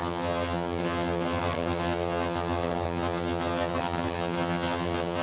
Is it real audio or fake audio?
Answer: fake